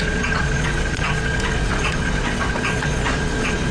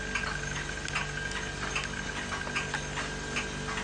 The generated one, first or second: first